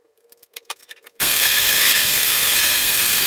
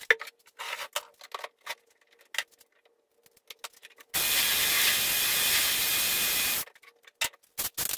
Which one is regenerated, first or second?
first